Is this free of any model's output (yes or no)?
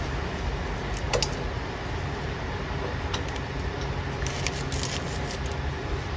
yes